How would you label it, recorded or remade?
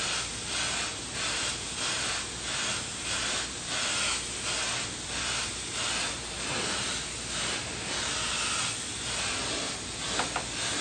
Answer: recorded